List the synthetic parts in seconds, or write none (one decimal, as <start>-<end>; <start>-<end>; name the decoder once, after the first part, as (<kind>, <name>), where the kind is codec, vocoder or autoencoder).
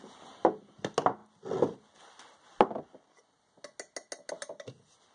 none